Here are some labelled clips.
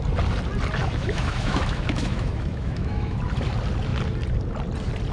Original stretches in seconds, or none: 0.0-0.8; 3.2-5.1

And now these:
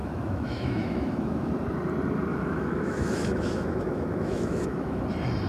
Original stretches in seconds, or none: 1.5-2.3; 5.0-5.5

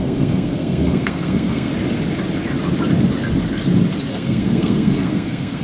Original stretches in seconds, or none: 1.7-4.1

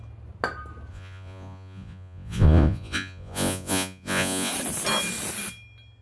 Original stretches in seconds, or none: 0.0-0.9; 4.5-6.0

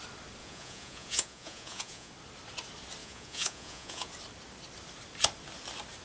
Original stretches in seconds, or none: 0.0-0.4; 2.1-3.0; 4.1-6.0